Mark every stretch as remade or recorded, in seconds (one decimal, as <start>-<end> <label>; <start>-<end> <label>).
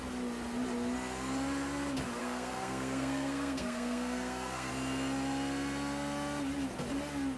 0.0-2.2 recorded; 2.2-4.7 remade; 4.7-7.4 recorded